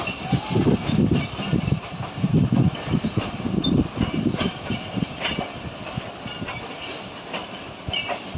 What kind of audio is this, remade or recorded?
recorded